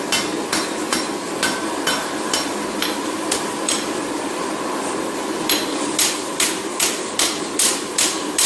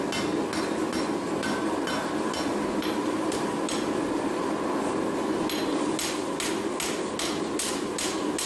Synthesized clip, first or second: first